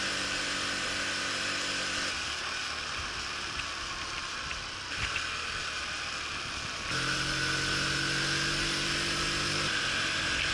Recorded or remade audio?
recorded